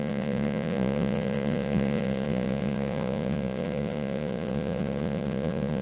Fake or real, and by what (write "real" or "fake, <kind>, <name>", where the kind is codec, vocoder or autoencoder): fake, vocoder, Vocos